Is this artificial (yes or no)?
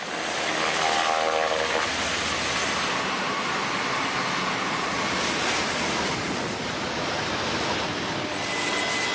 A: no